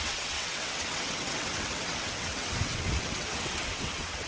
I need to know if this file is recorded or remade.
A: remade